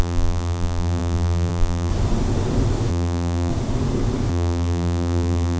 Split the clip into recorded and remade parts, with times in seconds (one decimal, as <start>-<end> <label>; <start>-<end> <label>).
0.0-1.9 remade; 1.9-2.9 recorded; 2.9-3.5 remade; 3.5-4.3 recorded; 4.3-5.6 remade